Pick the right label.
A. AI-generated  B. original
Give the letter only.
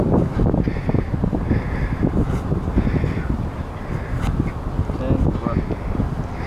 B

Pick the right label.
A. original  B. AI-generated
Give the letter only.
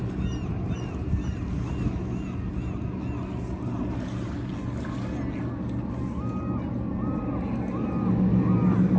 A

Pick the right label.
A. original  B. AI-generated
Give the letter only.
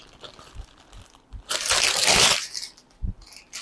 B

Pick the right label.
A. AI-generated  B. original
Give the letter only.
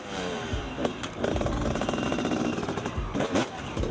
A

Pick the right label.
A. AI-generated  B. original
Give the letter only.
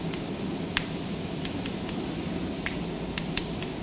B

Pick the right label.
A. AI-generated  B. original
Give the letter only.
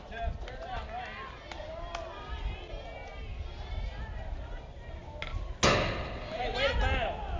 B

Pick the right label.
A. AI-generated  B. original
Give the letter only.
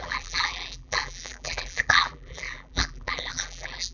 A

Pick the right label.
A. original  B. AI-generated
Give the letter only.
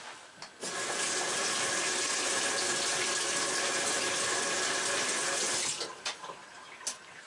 A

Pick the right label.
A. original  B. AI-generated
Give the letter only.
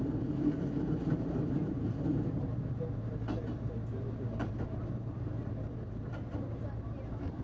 B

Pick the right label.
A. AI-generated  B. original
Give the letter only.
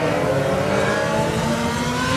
A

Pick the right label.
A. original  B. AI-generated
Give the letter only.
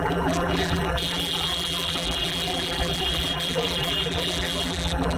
B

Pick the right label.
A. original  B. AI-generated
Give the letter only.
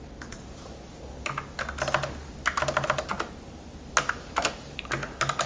A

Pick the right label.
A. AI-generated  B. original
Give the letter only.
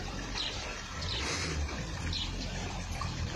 A